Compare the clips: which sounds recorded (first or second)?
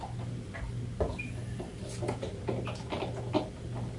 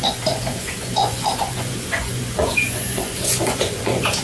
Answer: first